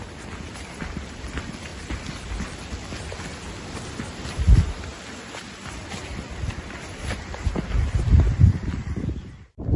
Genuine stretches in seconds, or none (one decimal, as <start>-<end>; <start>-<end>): 1.7-3.7